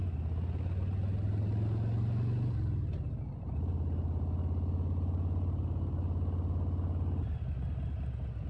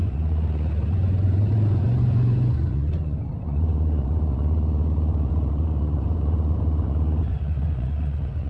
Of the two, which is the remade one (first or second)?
second